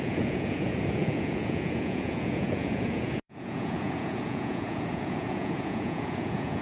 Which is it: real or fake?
fake